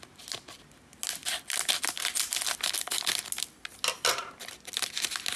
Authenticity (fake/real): real